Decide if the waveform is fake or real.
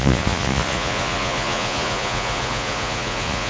fake